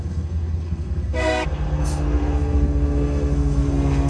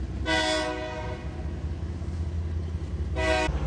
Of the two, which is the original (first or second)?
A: second